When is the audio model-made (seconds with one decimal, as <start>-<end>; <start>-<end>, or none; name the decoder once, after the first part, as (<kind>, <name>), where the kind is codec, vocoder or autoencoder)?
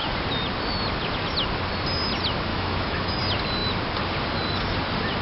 2.5-3.2 (autoencoder, DAC-VAE)